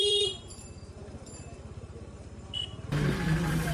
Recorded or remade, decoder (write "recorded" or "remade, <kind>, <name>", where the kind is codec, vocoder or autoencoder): remade, vocoder, BigVGAN v2